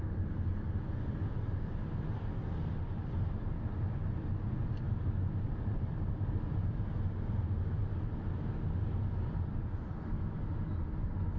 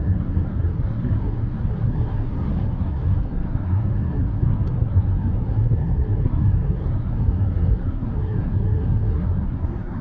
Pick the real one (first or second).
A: first